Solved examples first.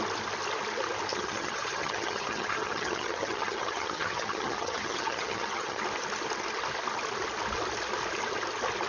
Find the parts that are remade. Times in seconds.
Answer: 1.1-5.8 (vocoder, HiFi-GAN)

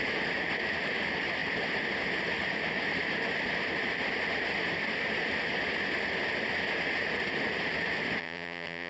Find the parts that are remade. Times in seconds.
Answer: 8.2-8.9 (vocoder, HiFi-GAN)

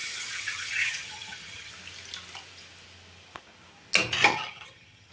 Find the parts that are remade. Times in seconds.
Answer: 0.0-1.7 (vocoder, HiFi-GAN); 4.3-5.1

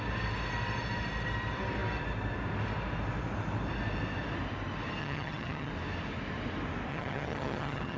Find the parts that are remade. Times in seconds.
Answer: 5.0-5.7 (vocoder, HiFi-GAN); 6.9-8.0

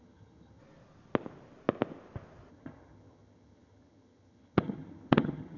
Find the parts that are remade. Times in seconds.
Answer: 0.0-0.6 (vocoder, HiFi-GAN); 2.5-5.6

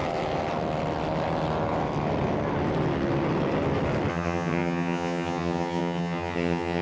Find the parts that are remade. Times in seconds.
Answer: 4.1-6.8 (vocoder, HiFi-GAN)

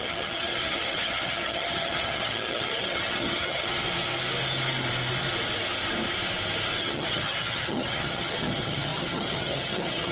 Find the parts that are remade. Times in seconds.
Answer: 0.0-3.7 (vocoder, HiFi-GAN); 6.8-10.1

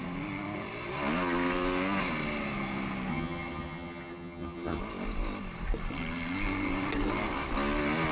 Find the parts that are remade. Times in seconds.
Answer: 3.1-4.8 (vocoder, HiFi-GAN)